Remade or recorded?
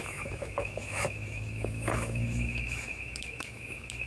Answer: remade